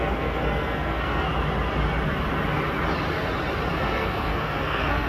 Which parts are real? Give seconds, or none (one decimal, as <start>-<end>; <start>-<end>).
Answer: 1.3-3.7